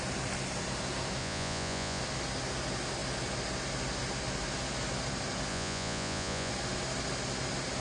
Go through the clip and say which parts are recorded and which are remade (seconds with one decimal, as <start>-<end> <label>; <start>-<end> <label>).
0.0-1.2 recorded; 1.2-2.0 remade; 2.0-5.5 recorded; 5.5-6.5 remade; 6.5-7.8 recorded